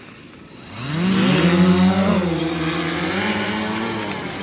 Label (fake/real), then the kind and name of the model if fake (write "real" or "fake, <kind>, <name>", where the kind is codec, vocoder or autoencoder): real